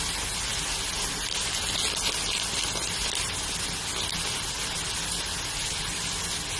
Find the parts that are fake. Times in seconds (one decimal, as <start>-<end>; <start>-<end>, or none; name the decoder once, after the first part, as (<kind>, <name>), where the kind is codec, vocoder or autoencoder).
none